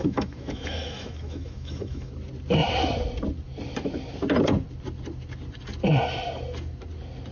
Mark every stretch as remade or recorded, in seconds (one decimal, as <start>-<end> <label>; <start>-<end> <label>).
0.0-2.1 remade; 2.1-7.3 recorded